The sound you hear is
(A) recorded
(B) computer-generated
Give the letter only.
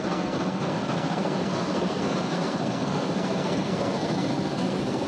B